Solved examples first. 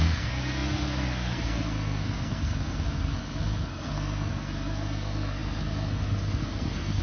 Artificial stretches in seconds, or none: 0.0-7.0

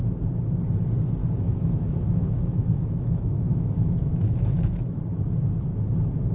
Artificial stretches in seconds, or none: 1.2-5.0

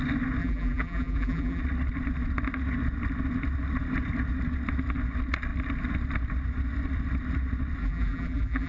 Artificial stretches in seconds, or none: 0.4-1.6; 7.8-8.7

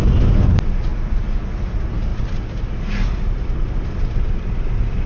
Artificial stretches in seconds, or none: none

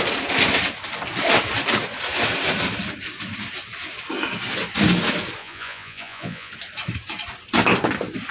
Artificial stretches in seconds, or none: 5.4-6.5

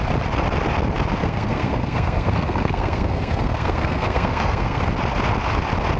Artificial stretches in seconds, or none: 1.2-4.8

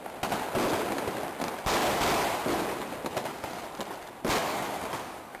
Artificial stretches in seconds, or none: 4.4-5.4

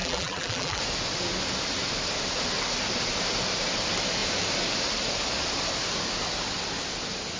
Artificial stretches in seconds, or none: 0.0-0.8